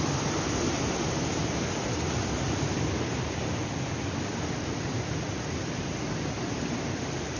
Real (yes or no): yes